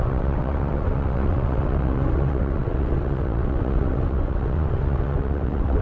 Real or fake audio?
fake